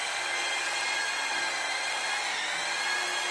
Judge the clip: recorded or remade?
recorded